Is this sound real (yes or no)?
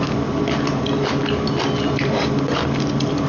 yes